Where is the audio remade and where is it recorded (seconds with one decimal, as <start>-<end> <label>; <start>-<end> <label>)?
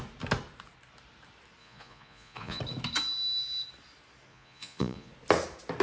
0.0-1.6 recorded; 1.6-2.6 remade; 2.6-4.3 recorded; 4.3-5.1 remade; 5.1-5.8 recorded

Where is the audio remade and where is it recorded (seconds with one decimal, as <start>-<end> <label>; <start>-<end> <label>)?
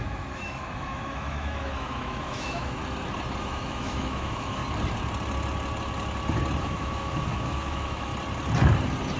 0.0-2.8 remade; 2.8-3.4 recorded; 3.4-4.6 remade; 4.6-6.6 recorded; 6.6-8.1 remade; 8.1-9.2 recorded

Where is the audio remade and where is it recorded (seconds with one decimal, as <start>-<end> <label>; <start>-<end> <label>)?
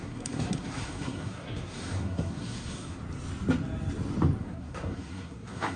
0.0-3.0 remade; 3.0-4.4 recorded; 4.4-5.8 remade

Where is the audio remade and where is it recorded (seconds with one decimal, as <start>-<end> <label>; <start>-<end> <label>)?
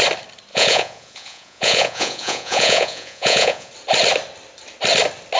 0.0-0.5 recorded; 0.5-3.7 remade; 3.7-5.4 recorded